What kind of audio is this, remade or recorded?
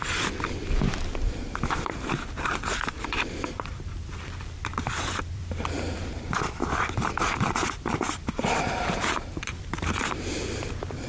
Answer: remade